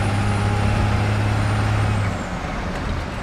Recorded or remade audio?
recorded